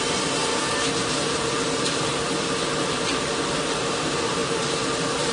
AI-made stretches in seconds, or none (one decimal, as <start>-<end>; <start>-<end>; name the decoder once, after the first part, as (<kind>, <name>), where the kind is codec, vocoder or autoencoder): 0.0-0.4 (vocoder, BigVGAN v2); 1.2-2.1; 2.9-5.3